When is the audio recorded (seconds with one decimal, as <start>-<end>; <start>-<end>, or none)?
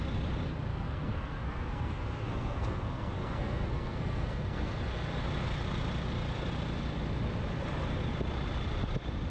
0.0-0.7; 4.8-9.3